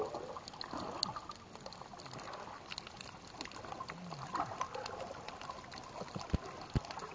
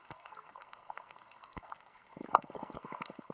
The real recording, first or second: first